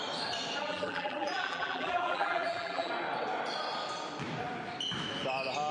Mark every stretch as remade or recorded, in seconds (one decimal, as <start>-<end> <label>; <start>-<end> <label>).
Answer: 0.0-0.6 recorded; 0.6-2.9 remade; 2.9-5.7 recorded